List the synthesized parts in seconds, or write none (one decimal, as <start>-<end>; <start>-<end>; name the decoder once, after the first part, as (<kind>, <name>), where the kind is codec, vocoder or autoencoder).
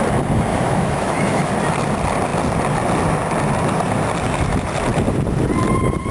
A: 0.5-1.5 (autoencoder, DAC-VAE)